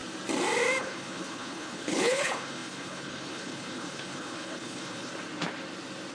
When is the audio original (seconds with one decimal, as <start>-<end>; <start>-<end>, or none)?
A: 0.0-0.8; 5.1-6.1